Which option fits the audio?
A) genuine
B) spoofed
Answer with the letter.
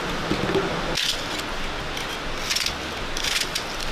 A